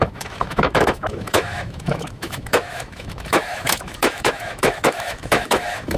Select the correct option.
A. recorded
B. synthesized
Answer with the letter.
B